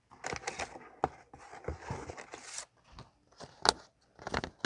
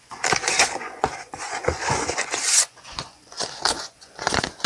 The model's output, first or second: second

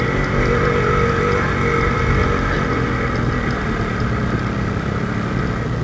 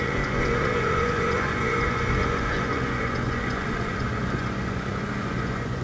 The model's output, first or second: second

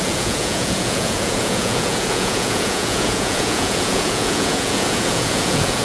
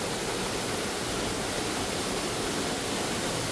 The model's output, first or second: first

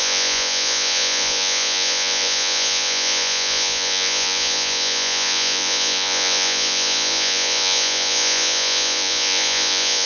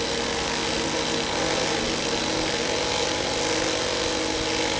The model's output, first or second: first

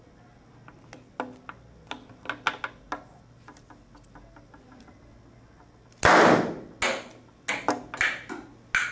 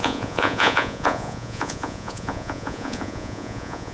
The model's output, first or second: second